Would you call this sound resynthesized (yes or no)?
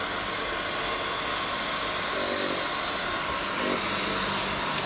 no